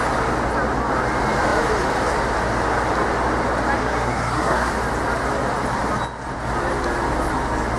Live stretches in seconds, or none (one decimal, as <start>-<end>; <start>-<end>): 0.0-3.8; 4.7-7.8